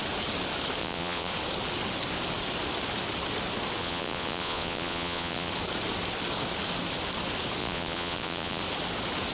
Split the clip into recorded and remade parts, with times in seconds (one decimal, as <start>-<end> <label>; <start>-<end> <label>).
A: 0.0-0.8 recorded; 0.8-1.3 remade; 1.3-3.8 recorded; 3.8-5.5 remade; 5.5-7.6 recorded; 7.6-8.6 remade; 8.6-9.3 recorded